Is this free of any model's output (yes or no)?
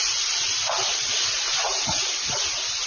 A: yes